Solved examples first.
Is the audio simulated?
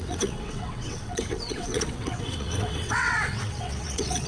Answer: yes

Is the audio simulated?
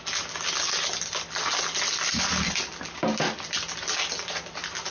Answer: no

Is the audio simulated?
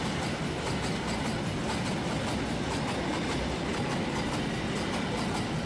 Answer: no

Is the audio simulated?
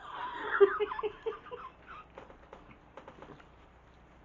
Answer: no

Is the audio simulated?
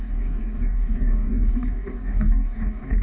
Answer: yes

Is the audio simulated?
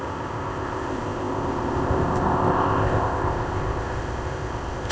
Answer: yes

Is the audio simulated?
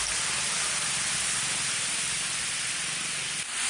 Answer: no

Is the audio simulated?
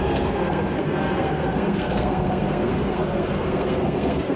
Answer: yes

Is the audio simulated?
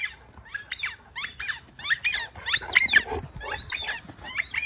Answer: no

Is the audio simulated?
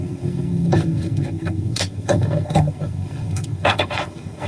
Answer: yes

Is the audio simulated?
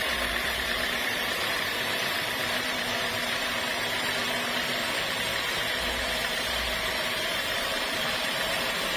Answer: yes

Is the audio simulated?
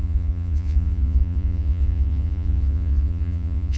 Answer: yes